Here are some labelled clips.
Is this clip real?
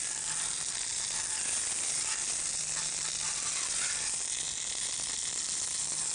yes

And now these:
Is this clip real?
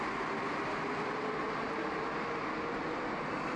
yes